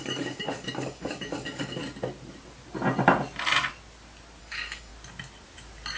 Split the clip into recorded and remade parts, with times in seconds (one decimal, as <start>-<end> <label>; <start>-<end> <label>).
0.0-1.8 remade; 1.8-4.4 recorded; 4.4-4.9 remade; 4.9-6.0 recorded